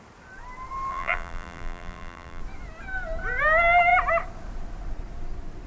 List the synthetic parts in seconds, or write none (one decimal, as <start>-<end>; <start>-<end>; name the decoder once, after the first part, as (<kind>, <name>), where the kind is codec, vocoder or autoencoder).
0.9-2.4 (vocoder, BigVGAN v2)